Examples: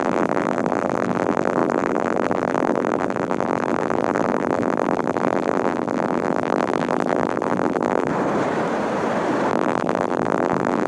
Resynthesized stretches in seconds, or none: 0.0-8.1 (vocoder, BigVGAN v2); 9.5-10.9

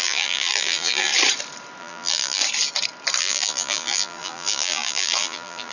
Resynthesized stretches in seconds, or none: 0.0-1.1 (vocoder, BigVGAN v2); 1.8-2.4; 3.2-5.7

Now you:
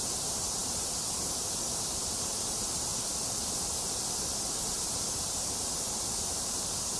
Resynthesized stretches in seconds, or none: 0.0-2.9 (vocoder, BigVGAN v2); 4.7-7.0

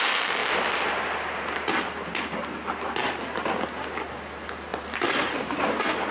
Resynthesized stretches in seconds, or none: 4.7-5.6 (vocoder, BigVGAN v2)